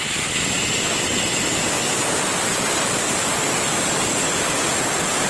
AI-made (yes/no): no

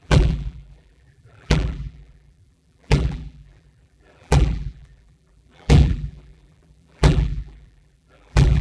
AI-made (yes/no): yes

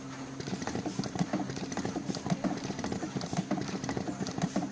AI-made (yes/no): yes